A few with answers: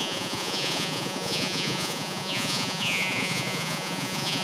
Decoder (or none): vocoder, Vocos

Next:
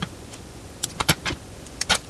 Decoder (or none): vocoder, Vocos